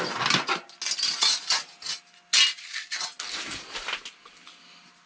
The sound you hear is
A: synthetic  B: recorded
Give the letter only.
B